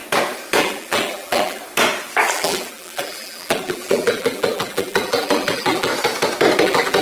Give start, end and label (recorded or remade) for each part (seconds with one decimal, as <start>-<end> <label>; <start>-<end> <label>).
0.0-0.6 recorded; 0.6-1.6 remade; 1.6-2.3 recorded; 2.3-5.9 remade; 5.9-6.6 recorded; 6.6-7.0 remade